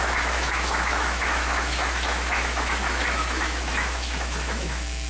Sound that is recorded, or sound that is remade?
remade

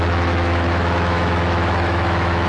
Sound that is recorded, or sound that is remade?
remade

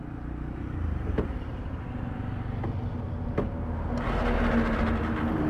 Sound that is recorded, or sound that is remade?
recorded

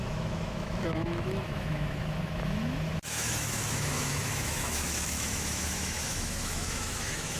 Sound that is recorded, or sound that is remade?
remade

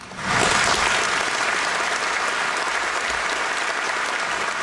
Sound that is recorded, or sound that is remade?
recorded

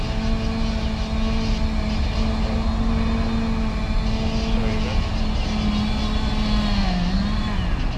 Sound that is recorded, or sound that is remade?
recorded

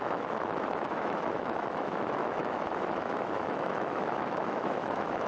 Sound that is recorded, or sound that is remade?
remade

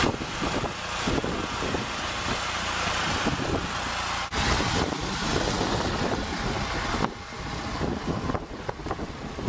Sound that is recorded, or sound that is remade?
recorded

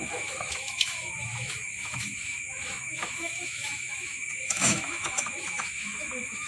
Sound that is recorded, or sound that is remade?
remade